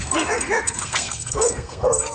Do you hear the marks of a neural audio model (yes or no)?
yes